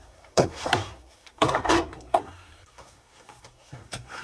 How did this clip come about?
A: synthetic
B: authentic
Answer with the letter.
A